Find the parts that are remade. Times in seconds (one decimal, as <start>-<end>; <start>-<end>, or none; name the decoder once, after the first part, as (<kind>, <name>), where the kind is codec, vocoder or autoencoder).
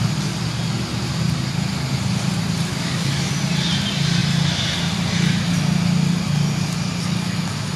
2.7-3.3 (codec, DAC)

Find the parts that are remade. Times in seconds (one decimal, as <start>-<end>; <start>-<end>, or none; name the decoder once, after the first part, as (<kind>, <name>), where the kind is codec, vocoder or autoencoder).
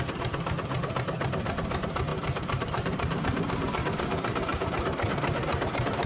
2.1-6.1 (vocoder, BigVGAN v2)